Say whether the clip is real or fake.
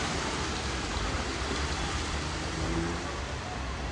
real